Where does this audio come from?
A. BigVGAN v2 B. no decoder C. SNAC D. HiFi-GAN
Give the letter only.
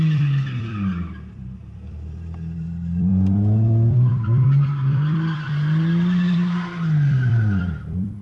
A